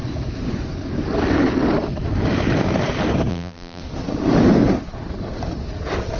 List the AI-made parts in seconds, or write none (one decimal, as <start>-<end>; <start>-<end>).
3.3-3.8